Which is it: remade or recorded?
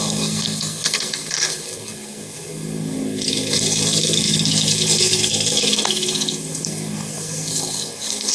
remade